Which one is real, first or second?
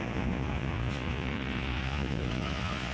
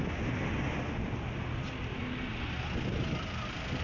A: second